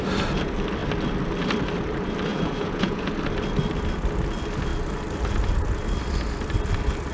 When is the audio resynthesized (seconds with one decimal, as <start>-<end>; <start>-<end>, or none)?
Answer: 2.3-3.1